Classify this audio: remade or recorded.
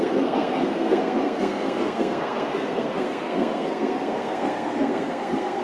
remade